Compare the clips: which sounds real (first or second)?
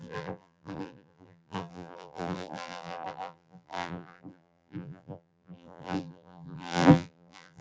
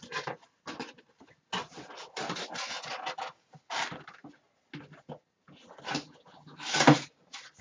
second